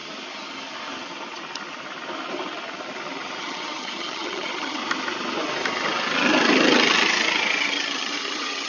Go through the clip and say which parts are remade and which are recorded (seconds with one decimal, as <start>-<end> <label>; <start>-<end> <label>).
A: 0.0-3.4 recorded; 3.4-4.8 remade; 4.8-7.6 recorded; 7.6-8.7 remade